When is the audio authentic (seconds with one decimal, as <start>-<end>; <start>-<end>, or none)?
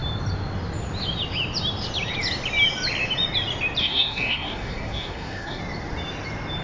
0.0-3.8; 5.6-6.6